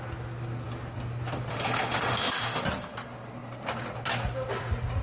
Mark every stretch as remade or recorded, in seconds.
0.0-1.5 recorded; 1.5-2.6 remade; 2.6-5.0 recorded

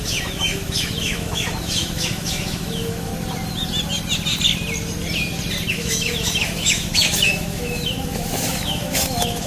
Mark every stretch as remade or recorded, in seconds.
0.0-3.1 remade; 3.1-5.7 recorded; 5.7-9.5 remade

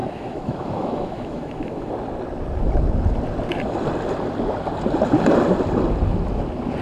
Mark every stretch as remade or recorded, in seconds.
0.0-1.9 remade; 1.9-6.8 recorded

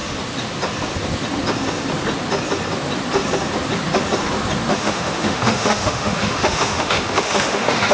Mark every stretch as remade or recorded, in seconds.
0.0-4.7 recorded; 4.7-7.9 remade

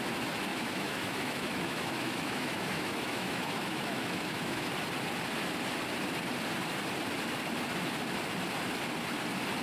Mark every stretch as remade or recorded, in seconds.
0.0-0.5 recorded; 0.5-4.7 remade; 4.7-9.6 recorded